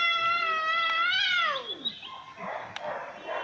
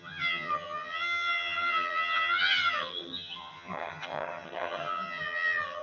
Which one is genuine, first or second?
first